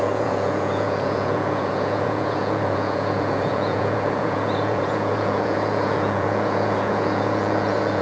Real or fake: fake